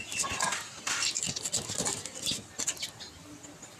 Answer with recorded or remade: recorded